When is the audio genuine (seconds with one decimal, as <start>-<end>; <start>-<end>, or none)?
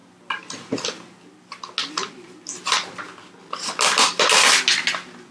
0.0-5.3